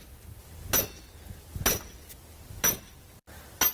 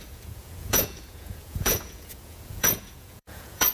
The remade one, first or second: second